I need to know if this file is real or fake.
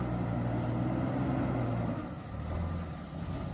real